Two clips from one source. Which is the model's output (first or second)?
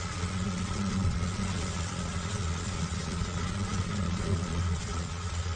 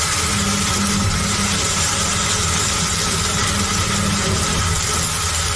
first